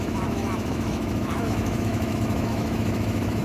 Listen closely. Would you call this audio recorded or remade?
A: remade